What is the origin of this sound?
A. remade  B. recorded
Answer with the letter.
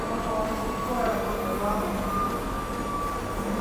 B